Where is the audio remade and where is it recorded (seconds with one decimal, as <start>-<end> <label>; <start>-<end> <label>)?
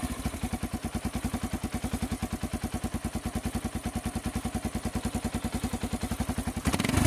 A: 0.0-7.1 recorded